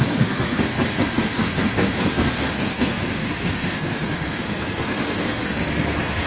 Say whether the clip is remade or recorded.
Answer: remade